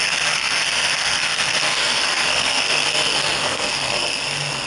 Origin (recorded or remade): remade